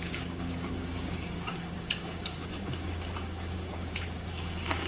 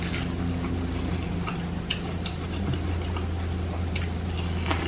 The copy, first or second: first